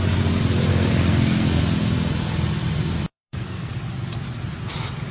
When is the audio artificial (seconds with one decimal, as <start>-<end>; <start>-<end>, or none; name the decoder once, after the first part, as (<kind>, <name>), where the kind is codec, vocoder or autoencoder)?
0.7-1.6 (codec, SNAC); 3.1-3.7